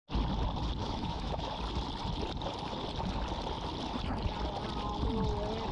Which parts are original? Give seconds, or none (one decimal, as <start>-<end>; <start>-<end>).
0.0-0.8; 1.5-5.7